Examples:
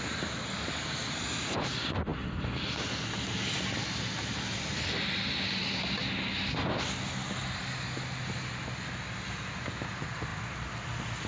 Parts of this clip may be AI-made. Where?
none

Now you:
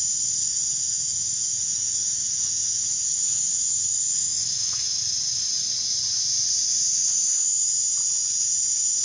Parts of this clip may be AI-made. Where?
0.5-5.0; 7.0-7.7

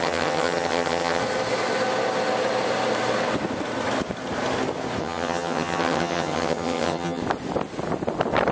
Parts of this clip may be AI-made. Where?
0.0-1.2; 5.0-7.2

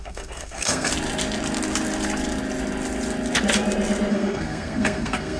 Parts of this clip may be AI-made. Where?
0.0-0.9; 4.1-5.4

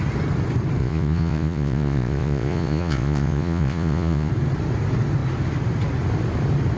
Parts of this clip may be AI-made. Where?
0.8-4.3

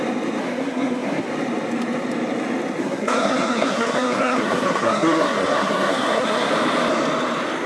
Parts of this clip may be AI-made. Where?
0.4-1.3; 2.8-6.5